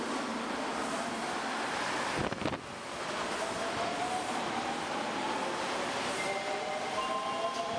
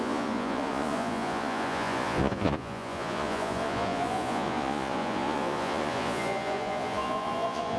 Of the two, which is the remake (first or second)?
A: second